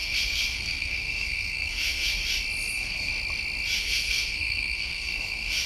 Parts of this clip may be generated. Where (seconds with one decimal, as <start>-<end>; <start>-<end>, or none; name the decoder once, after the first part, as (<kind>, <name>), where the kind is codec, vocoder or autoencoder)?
0.0-2.2 (codec, SNAC); 2.7-3.1; 3.8-5.7